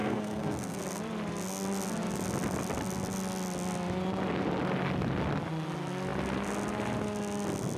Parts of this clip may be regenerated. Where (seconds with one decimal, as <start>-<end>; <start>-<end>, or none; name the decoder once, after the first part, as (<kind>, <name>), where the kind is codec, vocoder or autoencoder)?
0.0-0.8 (codec, SNAC)